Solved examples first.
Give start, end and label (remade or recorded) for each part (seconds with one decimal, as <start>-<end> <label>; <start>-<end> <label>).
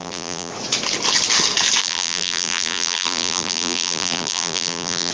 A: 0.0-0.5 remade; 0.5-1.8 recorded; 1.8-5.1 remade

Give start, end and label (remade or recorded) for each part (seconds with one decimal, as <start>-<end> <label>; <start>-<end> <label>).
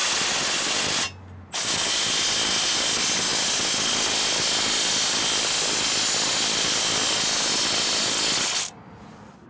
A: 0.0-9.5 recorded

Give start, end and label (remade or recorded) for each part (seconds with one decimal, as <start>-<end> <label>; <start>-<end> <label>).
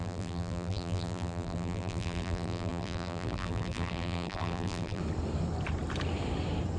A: 0.0-5.0 remade; 5.0-6.8 recorded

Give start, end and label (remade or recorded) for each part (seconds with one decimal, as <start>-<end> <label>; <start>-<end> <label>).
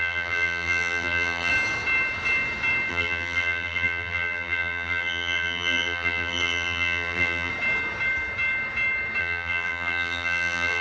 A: 0.0-1.5 remade; 1.5-2.9 recorded; 2.9-7.5 remade; 7.5-9.2 recorded; 9.2-10.8 remade